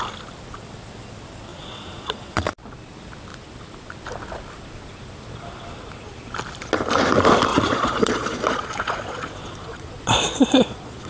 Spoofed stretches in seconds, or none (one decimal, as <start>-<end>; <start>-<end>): 1.5-2.5; 7.5-11.1